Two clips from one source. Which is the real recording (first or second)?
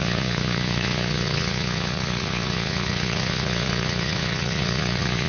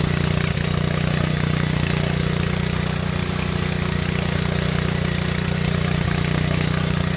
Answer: second